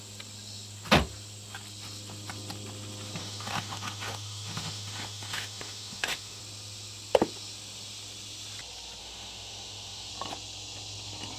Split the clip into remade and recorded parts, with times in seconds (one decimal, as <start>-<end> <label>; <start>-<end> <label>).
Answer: 0.0-3.2 recorded; 3.2-6.4 remade; 6.4-9.0 recorded; 9.0-10.1 remade; 10.1-11.4 recorded